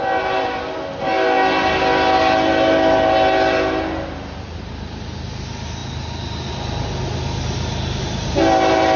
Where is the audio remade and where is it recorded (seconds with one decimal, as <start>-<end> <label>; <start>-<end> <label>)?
0.0-9.0 recorded